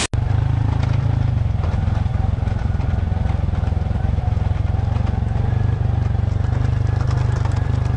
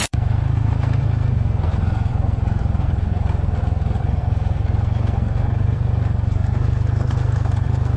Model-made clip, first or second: second